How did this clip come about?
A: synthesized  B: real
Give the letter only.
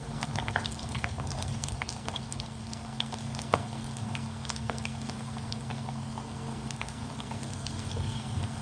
A